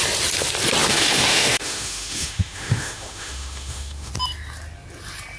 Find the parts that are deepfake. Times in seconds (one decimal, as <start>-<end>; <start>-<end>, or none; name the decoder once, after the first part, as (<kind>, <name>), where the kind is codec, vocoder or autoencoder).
0.9-4.1 (autoencoder, DAC-VAE)